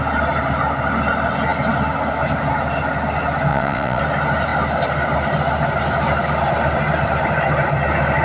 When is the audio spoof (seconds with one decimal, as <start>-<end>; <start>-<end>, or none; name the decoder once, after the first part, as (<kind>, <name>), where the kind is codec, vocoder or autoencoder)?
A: 3.5-4.0 (vocoder, WaveNeXt)